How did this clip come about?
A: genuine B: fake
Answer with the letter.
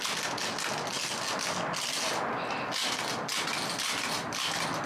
A